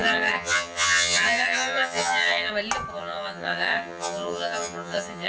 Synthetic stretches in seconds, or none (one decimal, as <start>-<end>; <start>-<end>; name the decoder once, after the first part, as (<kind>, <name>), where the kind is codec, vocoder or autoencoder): 0.0-2.5 (vocoder, HiFi-GAN); 2.9-5.3